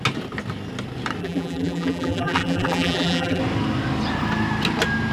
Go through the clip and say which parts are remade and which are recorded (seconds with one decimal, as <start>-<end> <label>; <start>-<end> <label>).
0.0-1.2 recorded; 1.2-3.4 remade; 3.4-5.1 recorded

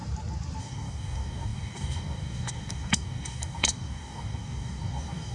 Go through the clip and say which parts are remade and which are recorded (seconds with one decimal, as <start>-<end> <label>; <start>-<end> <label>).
0.0-0.6 recorded; 0.6-5.3 remade

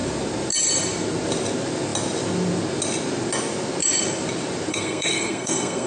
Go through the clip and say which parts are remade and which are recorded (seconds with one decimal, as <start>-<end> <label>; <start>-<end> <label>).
0.0-4.7 recorded; 4.7-5.9 remade

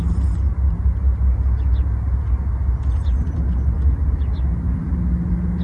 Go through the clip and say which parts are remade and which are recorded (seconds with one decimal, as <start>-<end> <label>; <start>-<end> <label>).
0.0-5.6 recorded

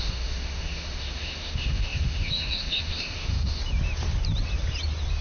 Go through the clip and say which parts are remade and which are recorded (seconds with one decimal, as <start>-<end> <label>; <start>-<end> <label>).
0.0-3.6 remade; 3.6-5.2 recorded

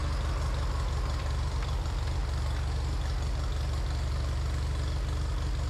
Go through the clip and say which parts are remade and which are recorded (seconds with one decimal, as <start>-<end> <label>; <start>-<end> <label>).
0.0-1.2 recorded; 1.2-2.2 remade; 2.2-5.7 recorded

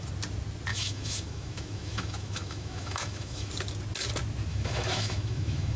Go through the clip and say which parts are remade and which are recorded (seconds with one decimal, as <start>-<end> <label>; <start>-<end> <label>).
0.0-0.7 recorded; 0.7-3.5 remade; 3.5-4.5 recorded; 4.5-5.8 remade

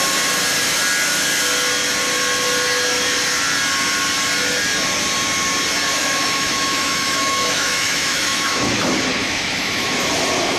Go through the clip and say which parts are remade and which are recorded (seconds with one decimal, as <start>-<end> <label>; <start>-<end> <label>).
0.0-6.0 recorded; 6.0-8.7 remade; 8.7-9.2 recorded; 9.2-9.9 remade; 9.9-10.6 recorded